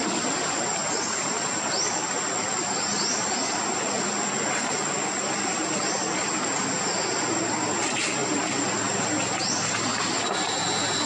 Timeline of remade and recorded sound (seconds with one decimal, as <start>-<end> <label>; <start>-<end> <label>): 0.0-11.1 recorded